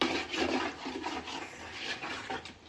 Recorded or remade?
recorded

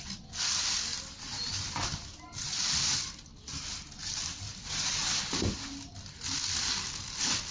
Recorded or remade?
recorded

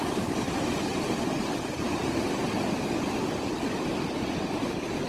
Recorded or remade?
recorded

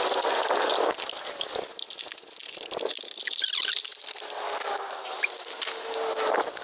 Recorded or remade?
recorded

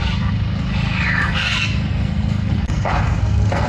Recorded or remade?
remade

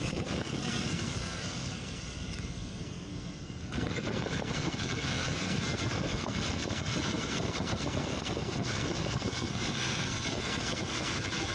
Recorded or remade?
remade